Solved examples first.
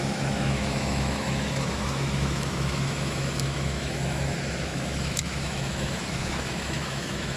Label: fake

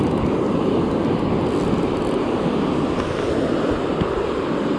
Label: real